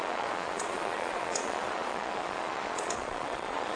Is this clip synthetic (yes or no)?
yes